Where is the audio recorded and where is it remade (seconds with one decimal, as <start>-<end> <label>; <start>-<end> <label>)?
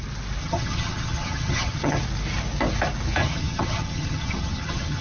0.0-0.4 recorded; 0.4-2.0 remade; 2.0-3.2 recorded; 3.2-5.0 remade